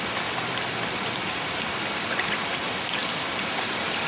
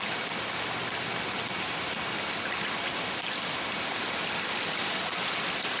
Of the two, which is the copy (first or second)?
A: first